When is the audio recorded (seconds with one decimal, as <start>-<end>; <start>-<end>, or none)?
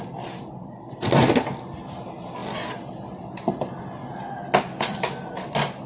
0.0-5.9